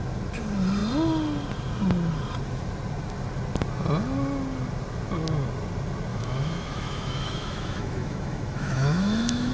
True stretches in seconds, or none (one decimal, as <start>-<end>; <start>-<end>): 0.0-6.1

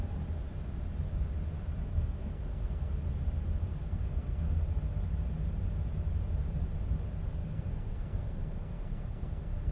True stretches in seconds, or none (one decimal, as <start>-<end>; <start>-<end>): 0.0-1.9; 2.9-3.7; 4.6-7.4

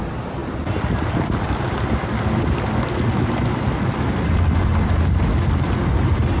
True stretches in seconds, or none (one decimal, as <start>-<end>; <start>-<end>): 0.0-6.4

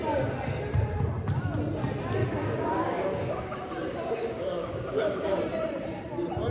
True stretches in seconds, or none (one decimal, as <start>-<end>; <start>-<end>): 0.0-2.2; 5.4-6.5

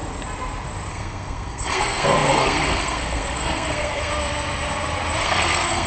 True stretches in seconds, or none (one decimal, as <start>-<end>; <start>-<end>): 0.0-0.9; 4.1-5.2

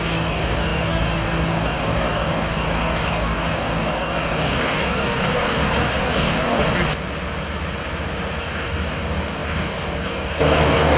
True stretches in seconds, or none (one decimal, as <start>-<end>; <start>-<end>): 6.6-8.4